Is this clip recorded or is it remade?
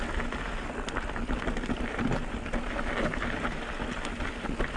recorded